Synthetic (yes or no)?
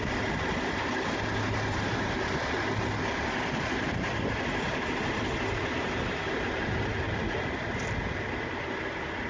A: no